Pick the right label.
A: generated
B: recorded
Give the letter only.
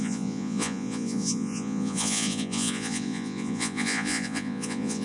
A